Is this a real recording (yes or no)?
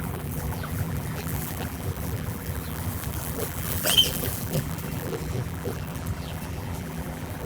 no